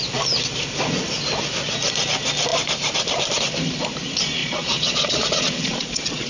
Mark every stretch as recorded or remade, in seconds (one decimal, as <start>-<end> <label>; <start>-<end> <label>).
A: 0.0-4.4 recorded; 4.4-6.3 remade